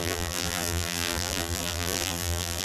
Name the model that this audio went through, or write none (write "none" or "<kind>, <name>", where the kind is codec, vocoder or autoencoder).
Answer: vocoder, BigVGAN v2